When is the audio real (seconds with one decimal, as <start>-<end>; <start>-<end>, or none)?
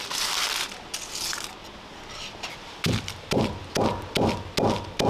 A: 0.0-1.6; 3.8-5.1